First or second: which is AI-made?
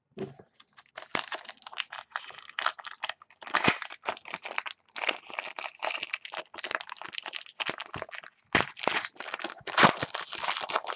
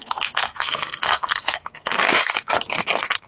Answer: second